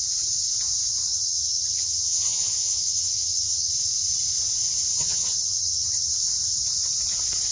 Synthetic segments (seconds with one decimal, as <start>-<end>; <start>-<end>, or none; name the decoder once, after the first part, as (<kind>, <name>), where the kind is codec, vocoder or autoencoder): 1.1-3.7 (vocoder, HiFi-GAN); 4.9-6.1